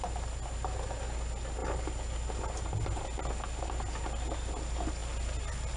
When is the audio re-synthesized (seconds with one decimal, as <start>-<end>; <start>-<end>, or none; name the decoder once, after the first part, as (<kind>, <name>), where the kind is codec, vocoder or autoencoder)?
none